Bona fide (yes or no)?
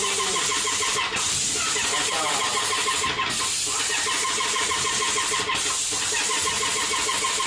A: yes